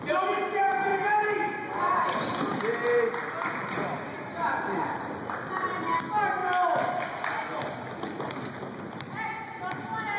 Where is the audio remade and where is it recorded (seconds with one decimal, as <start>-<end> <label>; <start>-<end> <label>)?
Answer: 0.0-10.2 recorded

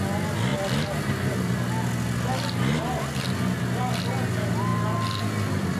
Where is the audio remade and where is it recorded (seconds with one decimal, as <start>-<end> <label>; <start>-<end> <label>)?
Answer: 0.0-5.8 recorded

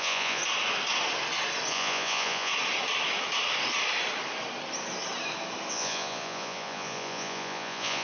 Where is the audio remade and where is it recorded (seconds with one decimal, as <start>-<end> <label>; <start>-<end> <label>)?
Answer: 0.0-0.4 remade; 0.4-1.7 recorded; 1.7-2.5 remade; 2.5-5.7 recorded; 5.7-8.0 remade